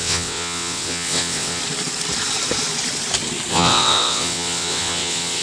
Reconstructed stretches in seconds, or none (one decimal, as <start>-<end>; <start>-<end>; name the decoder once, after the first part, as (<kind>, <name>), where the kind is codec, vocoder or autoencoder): 0.0-1.6 (vocoder, WaveNeXt); 3.5-5.4